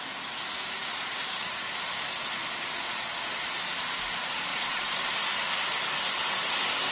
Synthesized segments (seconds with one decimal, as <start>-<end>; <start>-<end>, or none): 4.5-5.1